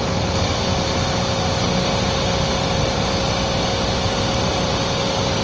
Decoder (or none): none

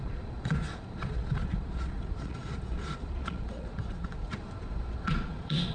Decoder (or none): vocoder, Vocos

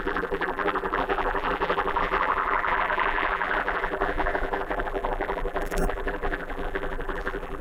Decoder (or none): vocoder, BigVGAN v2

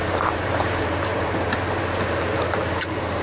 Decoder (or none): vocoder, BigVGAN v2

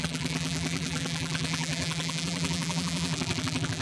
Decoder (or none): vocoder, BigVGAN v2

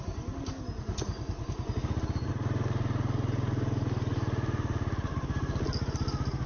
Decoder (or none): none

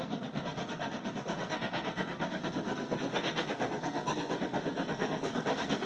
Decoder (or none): codec, SNAC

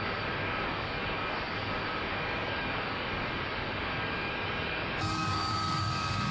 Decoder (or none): codec, DAC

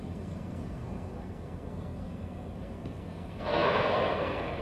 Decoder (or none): codec, SNAC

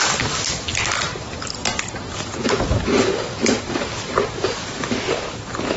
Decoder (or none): none